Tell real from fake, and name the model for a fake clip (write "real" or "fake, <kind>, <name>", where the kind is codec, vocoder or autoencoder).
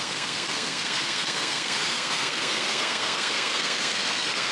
fake, codec, SNAC